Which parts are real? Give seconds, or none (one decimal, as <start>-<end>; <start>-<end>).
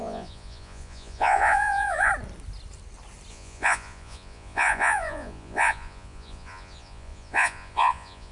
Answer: 2.1-3.3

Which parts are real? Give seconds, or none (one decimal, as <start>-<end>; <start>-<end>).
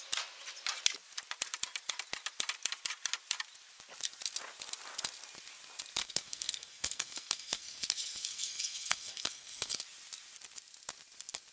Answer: 0.0-6.0; 9.8-11.5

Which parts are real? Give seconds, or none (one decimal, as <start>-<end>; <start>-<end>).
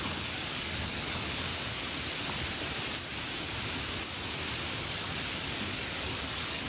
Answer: 1.5-4.8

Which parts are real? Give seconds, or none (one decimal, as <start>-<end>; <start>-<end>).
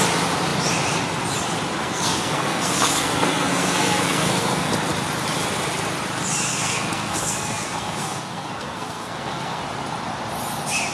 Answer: 0.0-1.8; 4.7-6.5; 9.6-10.9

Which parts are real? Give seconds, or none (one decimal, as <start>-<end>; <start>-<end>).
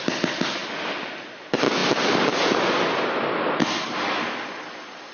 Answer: 0.0-5.1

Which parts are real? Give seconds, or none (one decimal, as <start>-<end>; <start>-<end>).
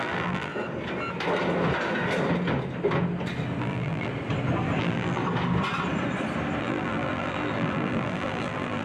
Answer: 0.5-3.6; 4.1-4.8; 5.2-6.6